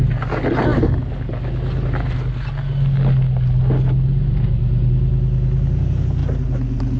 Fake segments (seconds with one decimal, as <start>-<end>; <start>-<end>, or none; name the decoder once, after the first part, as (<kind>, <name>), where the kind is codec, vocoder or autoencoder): none